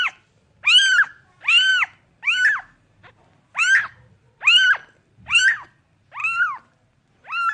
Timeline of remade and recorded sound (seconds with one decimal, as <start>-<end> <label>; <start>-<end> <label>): 0.0-7.5 recorded